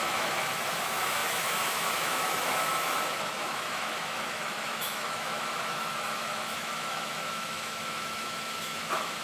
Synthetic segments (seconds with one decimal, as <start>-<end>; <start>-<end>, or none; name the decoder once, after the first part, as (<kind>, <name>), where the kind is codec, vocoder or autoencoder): 0.0-9.2 (autoencoder, DAC-VAE)